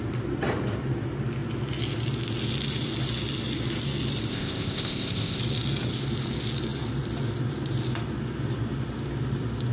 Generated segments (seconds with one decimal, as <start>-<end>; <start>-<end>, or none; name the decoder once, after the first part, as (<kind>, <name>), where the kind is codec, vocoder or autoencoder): 4.3-5.4 (codec, ZipCodec)